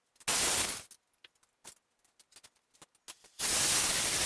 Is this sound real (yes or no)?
yes